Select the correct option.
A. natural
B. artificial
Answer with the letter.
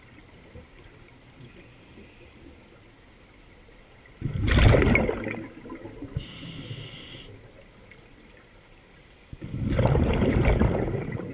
A